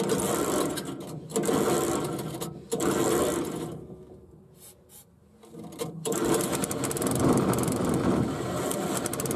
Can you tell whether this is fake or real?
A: real